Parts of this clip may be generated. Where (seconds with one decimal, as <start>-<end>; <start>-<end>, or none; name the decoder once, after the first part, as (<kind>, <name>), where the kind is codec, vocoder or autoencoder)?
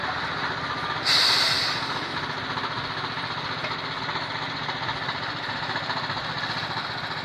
none